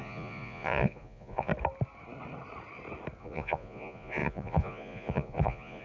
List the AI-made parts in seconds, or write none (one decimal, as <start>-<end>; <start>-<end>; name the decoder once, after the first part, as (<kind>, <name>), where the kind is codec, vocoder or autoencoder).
0.0-1.5 (vocoder, Vocos); 3.2-5.8